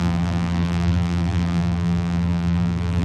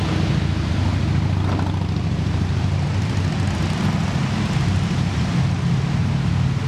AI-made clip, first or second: first